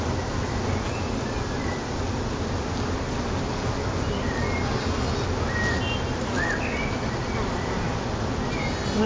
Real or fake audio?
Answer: real